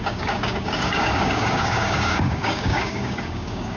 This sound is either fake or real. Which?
fake